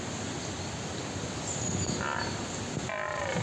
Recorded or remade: recorded